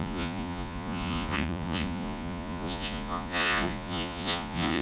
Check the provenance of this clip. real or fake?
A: fake